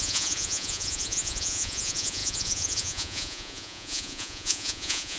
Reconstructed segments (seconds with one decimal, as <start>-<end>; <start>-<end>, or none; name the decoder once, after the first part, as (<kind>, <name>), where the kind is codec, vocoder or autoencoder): 0.0-5.2 (vocoder, Vocos)